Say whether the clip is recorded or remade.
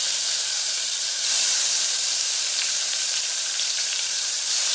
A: remade